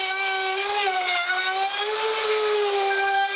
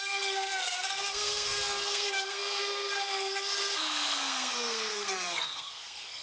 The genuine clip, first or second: first